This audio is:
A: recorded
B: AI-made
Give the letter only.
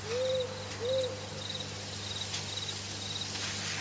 A